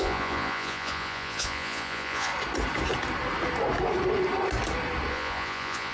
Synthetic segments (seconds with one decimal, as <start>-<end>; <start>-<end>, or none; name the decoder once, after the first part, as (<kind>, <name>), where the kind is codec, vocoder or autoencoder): 0.0-2.3 (vocoder, Vocos); 5.1-5.9